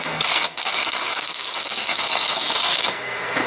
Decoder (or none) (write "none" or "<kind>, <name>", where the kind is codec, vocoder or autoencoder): codec, SNAC